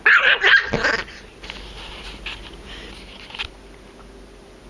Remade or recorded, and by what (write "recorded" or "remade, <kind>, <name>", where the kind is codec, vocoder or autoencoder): recorded